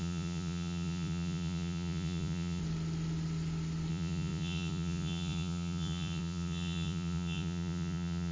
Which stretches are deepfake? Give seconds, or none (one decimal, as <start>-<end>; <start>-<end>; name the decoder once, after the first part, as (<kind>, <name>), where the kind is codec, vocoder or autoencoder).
0.0-2.6 (vocoder, Vocos); 3.9-8.3